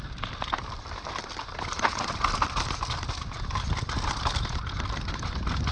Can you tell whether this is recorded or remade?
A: recorded